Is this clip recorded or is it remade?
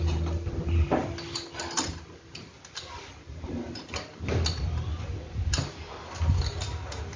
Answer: recorded